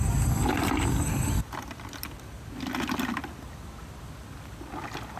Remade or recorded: recorded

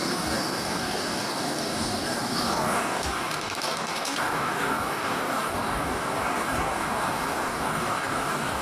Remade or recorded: remade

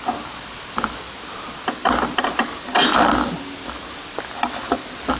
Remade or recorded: recorded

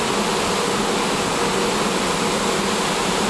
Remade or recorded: recorded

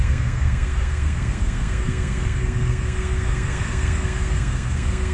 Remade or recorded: remade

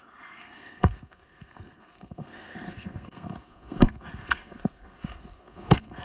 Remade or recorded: remade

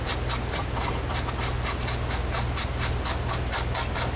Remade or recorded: recorded